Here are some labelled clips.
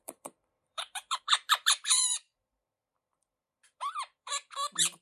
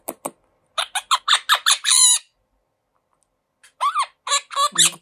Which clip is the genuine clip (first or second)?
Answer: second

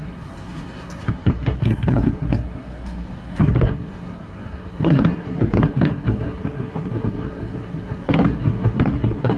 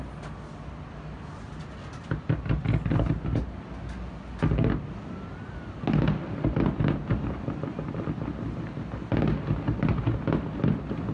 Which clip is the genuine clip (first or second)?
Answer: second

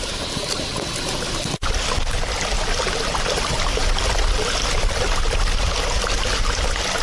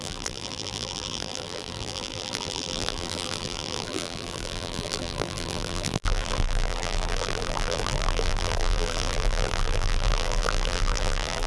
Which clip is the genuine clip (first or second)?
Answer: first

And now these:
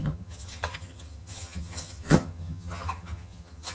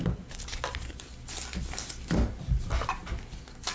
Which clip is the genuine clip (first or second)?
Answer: second